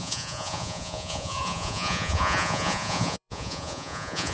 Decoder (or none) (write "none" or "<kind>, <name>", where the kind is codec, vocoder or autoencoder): vocoder, Vocos